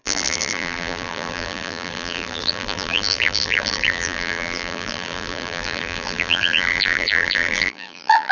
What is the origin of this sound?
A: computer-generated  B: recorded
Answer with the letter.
A